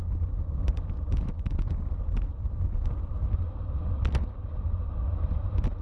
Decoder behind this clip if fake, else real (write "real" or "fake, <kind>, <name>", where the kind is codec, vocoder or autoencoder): real